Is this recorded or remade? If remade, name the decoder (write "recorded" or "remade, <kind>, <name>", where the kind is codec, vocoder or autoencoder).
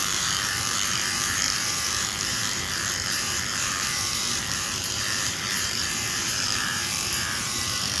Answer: remade, vocoder, BigVGAN v2